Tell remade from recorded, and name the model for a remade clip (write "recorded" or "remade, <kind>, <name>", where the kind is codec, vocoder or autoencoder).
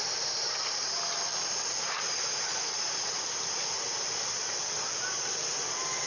recorded